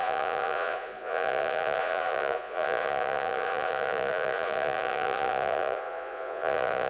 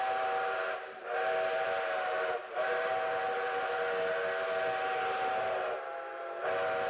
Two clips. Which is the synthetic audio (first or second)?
first